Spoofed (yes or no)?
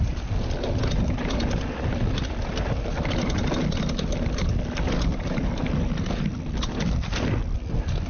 no